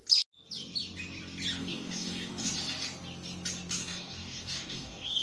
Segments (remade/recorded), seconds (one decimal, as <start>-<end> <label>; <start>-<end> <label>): 0.0-1.6 recorded; 1.6-2.5 remade; 2.5-3.8 recorded; 3.8-5.2 remade